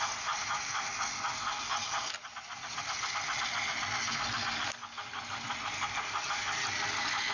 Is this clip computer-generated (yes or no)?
no